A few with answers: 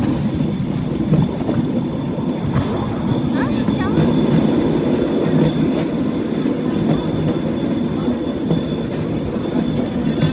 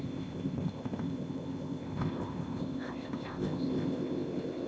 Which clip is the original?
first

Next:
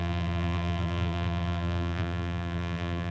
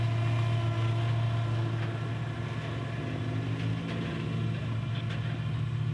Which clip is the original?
second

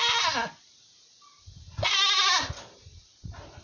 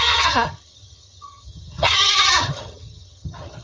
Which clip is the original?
first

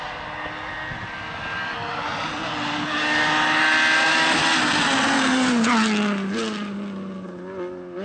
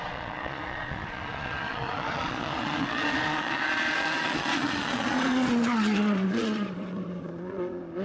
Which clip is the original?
first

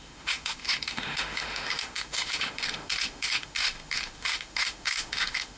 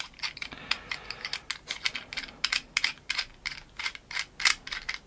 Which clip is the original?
second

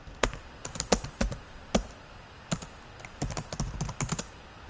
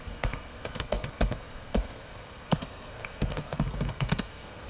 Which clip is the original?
first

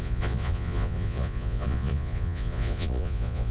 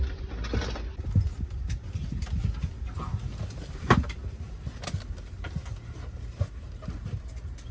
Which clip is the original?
second